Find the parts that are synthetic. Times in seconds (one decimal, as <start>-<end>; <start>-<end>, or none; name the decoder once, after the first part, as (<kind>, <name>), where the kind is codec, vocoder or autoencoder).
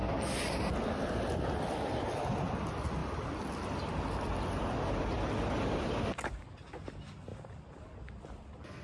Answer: none